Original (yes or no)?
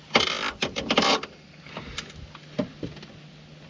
yes